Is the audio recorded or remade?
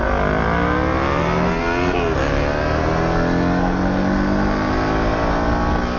recorded